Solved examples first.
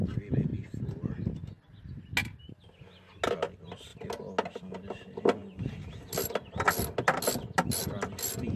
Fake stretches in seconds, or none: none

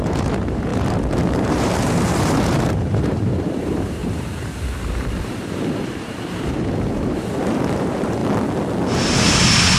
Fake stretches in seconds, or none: 0.0-8.2 (vocoder, BigVGAN v2); 9.4-9.8

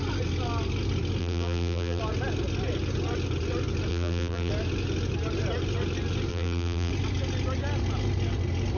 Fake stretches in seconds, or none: 1.2-2.0 (vocoder, BigVGAN v2); 3.9-4.5; 6.3-6.9

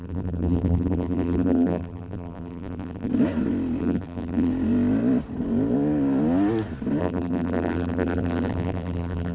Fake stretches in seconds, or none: 0.0-3.1 (vocoder, BigVGAN v2); 3.8-4.5; 7.0-9.3